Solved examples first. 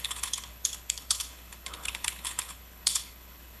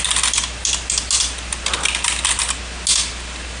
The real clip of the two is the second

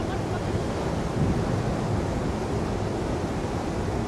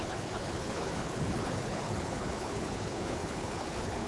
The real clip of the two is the first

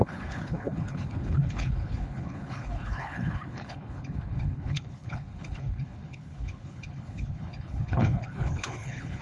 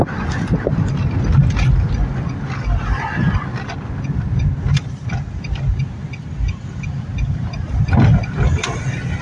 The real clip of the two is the second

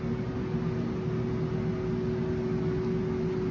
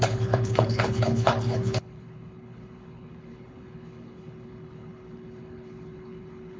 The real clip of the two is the first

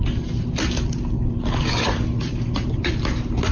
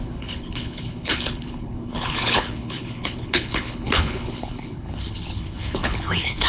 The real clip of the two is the first